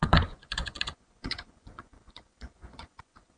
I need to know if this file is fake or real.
fake